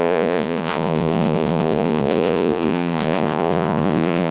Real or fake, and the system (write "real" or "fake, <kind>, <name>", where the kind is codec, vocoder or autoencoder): fake, vocoder, Vocos